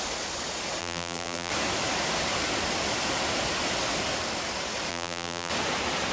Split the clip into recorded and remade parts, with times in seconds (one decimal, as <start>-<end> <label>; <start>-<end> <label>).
0.0-0.8 recorded; 0.8-1.5 remade; 1.5-4.9 recorded; 4.9-5.5 remade; 5.5-6.1 recorded